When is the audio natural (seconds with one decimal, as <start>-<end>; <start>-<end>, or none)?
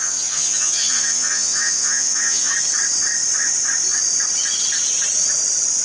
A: 2.5-5.8